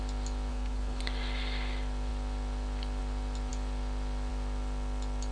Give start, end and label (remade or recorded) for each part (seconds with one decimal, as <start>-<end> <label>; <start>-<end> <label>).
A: 0.0-0.5 recorded; 0.5-1.0 remade; 1.0-5.3 recorded